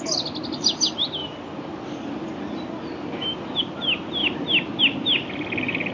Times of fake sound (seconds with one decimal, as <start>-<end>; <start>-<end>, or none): none